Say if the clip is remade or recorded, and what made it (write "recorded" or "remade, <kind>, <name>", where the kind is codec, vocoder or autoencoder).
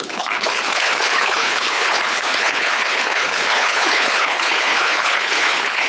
remade, codec, HILCodec